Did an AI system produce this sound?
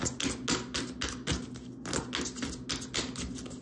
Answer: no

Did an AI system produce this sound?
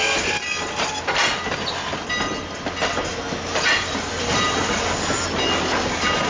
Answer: no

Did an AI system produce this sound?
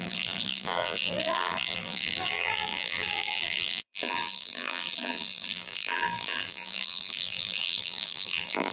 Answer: yes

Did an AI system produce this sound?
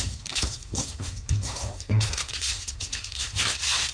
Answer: yes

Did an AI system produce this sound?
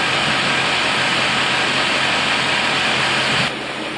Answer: no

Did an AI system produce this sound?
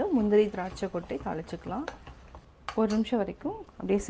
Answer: no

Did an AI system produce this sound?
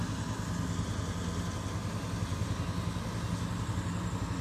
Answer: no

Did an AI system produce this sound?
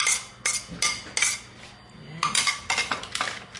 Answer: no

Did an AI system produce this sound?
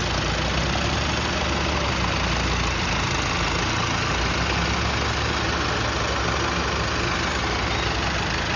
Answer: no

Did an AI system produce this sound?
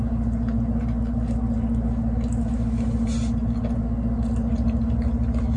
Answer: no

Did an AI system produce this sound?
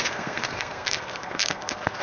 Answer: yes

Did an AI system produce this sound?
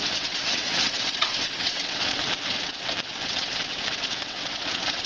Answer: yes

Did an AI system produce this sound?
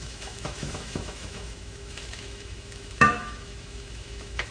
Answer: yes